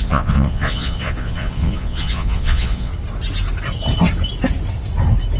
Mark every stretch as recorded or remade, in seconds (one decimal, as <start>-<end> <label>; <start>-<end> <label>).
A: 0.0-2.9 remade; 2.9-5.4 recorded